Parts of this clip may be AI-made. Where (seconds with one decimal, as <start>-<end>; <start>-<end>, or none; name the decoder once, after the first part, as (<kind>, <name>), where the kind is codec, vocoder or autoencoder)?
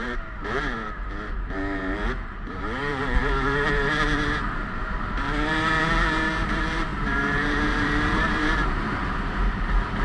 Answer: 0.0-10.0 (vocoder, BigVGAN v2)